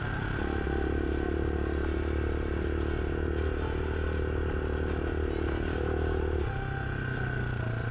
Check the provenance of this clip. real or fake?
real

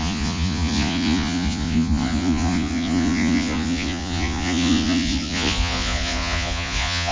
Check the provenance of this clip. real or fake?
fake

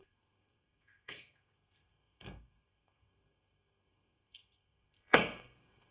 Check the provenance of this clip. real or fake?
fake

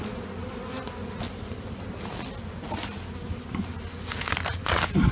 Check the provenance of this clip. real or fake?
real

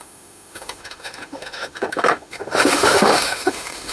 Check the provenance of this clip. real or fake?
fake